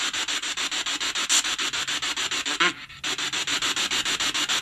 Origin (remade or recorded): recorded